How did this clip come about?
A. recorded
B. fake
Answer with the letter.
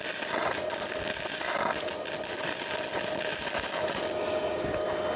A